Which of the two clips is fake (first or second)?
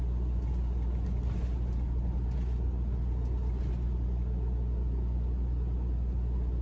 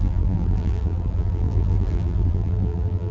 second